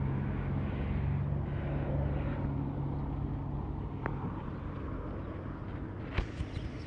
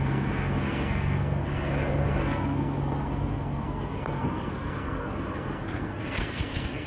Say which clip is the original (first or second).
first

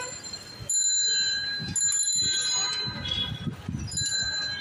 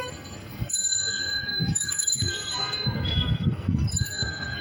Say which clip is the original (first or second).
first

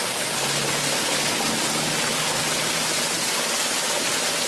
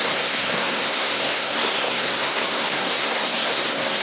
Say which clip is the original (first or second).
first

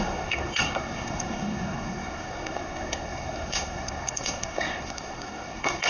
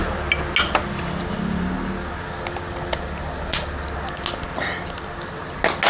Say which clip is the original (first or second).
second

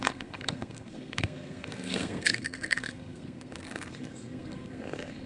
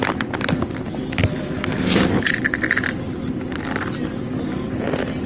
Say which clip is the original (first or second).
second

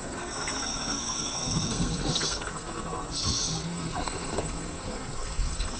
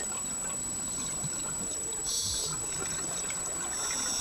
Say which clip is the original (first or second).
second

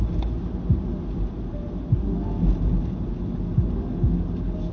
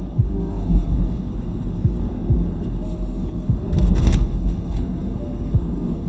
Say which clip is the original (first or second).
first